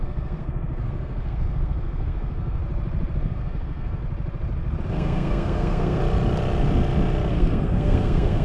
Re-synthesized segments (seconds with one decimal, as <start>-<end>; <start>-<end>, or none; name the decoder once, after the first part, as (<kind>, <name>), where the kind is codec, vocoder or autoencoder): 0.0-2.6 (codec, SNAC); 3.2-4.0; 4.9-6.0; 7.3-8.4